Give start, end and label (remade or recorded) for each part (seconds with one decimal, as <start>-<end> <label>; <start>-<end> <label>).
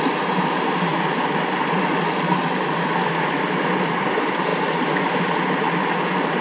0.0-6.4 recorded